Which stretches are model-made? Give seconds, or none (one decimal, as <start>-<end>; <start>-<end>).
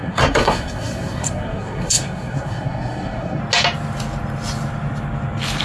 0.0-3.4